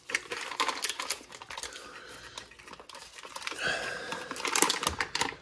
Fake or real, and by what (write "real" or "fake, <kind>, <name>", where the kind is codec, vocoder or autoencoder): real